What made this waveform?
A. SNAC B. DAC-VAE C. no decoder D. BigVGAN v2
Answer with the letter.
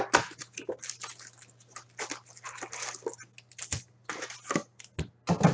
C